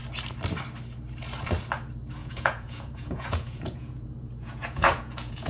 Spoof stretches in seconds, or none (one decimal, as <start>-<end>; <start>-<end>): 2.2-5.5